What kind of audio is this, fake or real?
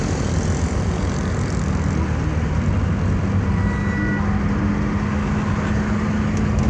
real